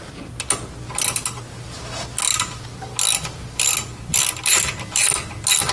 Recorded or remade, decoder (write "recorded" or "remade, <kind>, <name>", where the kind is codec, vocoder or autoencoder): recorded